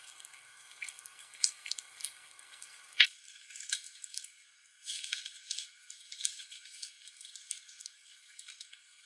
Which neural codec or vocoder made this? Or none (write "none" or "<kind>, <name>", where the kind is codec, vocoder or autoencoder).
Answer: codec, SNAC